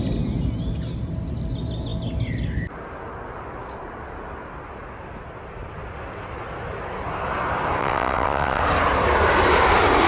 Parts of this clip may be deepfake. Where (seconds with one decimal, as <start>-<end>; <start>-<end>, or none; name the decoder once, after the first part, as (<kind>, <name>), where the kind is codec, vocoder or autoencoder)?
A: 7.8-8.6 (vocoder, WaveNeXt)